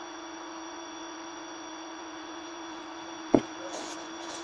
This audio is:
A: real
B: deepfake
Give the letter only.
B